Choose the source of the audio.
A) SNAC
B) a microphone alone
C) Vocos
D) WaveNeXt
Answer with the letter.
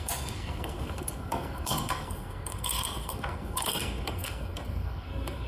A